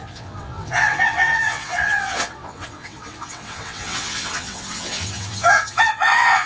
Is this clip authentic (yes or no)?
no